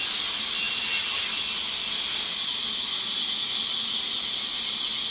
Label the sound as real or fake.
real